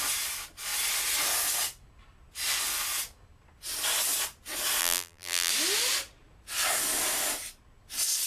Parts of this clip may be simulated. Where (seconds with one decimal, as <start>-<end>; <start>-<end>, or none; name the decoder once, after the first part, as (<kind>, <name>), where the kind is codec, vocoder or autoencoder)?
4.8-5.5 (vocoder, BigVGAN v2)